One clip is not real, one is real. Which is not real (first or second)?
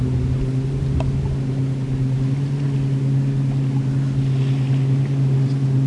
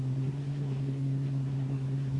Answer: second